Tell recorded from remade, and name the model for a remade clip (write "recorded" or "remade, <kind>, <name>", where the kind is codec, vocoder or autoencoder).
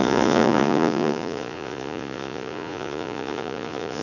remade, vocoder, Vocos